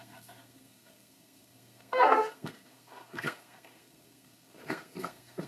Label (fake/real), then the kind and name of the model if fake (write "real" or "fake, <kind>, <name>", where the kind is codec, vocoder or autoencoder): fake, codec, SNAC